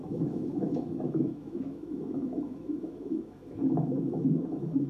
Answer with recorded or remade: remade